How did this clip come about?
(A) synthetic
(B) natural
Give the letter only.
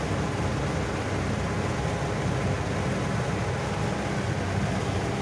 B